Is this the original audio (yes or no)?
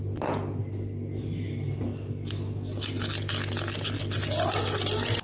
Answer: yes